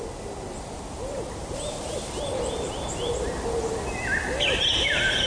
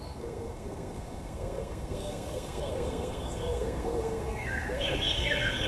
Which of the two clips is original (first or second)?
first